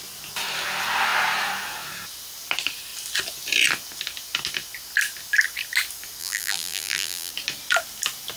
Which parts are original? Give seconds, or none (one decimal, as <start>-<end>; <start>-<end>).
0.0-6.2; 7.3-8.4